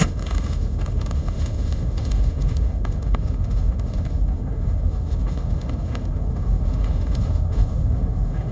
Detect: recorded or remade remade